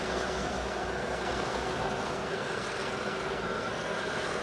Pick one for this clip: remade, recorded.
remade